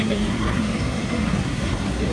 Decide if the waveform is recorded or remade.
remade